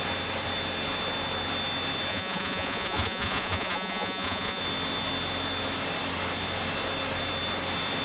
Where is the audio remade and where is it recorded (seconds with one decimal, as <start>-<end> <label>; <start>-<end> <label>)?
0.0-2.1 recorded; 2.1-4.6 remade; 4.6-8.0 recorded